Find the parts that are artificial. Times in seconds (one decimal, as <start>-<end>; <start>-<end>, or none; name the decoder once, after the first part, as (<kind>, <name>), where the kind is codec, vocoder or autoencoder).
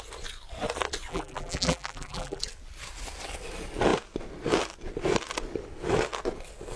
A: 1.1-2.4 (vocoder, BigVGAN v2)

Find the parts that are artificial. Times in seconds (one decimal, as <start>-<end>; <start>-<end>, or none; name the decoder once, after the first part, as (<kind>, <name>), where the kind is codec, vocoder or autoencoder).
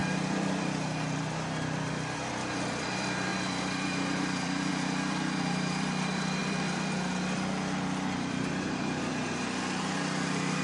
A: 0.0-10.6 (vocoder, BigVGAN v2)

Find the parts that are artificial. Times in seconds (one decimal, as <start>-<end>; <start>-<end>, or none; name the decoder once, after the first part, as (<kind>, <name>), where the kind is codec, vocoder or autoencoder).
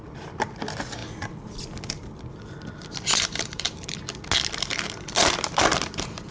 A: 3.1-4.0 (vocoder, BigVGAN v2)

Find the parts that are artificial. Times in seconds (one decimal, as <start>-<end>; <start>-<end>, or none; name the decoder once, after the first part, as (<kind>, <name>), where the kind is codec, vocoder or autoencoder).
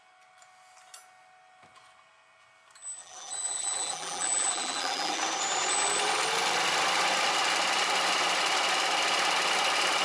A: 3.0-5.2 (vocoder, BigVGAN v2)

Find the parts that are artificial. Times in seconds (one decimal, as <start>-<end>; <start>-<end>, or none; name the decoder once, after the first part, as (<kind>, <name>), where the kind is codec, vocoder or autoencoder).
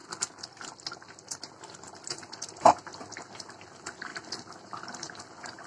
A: 3.4-5.7 (vocoder, BigVGAN v2)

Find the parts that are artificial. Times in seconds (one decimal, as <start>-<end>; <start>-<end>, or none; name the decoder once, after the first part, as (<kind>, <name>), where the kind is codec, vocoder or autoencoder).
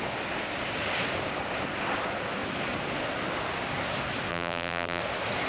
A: 4.3-5.0 (vocoder, BigVGAN v2)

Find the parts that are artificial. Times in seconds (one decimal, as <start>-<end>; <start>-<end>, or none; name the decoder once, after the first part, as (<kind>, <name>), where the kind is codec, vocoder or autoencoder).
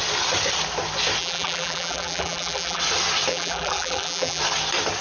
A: 1.2-2.8 (vocoder, BigVGAN v2); 3.3-4.4